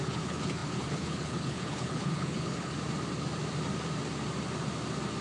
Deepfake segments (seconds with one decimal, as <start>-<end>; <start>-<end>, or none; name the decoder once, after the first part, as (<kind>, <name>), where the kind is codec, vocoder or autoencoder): 0.0-2.7 (codec, HILCodec)